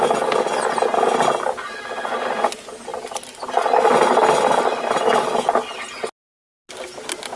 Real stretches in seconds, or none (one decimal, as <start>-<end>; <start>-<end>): 0.0-7.4